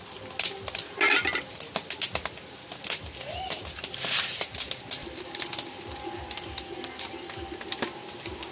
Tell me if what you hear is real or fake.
real